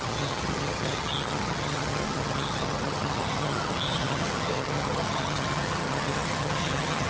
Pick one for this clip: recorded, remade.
remade